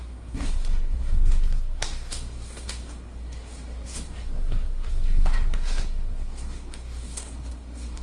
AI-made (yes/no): yes